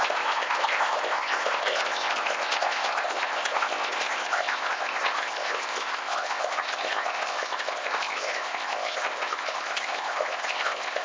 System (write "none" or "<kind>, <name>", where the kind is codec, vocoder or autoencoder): codec, ZipCodec